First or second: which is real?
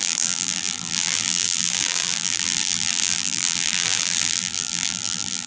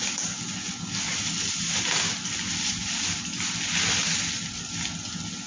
second